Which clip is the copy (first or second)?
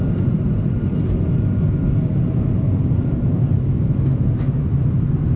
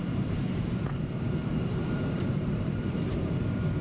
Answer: second